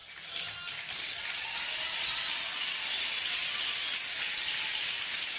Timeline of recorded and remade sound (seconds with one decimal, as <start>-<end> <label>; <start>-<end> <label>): 0.0-5.4 recorded